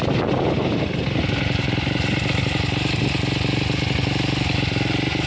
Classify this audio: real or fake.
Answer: real